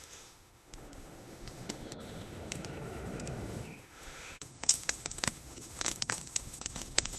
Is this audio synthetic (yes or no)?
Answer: yes